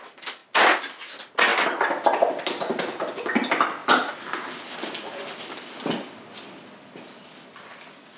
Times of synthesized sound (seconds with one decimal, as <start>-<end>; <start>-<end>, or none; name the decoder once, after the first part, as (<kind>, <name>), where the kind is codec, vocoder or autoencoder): none